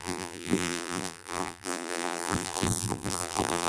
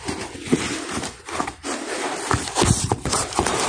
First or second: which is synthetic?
first